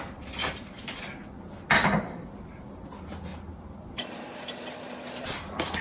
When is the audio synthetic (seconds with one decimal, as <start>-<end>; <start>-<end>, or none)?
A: 0.4-1.0